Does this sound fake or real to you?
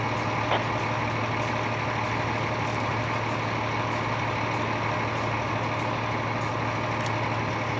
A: real